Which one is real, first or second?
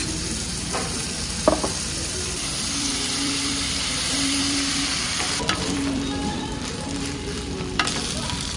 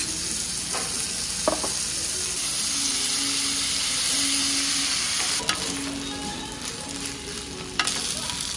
second